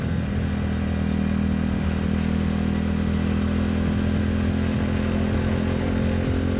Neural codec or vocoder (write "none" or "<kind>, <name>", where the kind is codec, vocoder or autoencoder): none